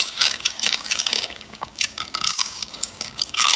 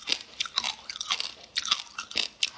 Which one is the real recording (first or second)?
second